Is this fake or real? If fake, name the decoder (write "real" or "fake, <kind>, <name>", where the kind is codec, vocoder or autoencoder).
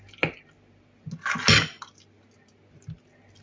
real